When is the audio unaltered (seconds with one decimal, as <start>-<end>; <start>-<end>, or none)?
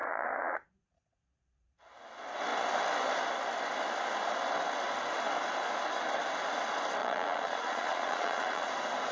1.8-7.0; 8.7-9.1